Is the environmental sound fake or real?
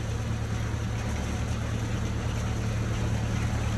real